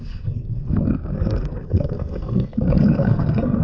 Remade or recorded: remade